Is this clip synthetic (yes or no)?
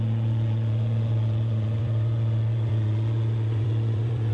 yes